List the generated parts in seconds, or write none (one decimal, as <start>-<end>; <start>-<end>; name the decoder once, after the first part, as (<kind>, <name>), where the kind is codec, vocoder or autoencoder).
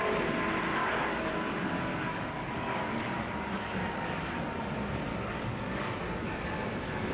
0.8-1.3 (codec, DAC); 1.9-4.6; 5.1-6.5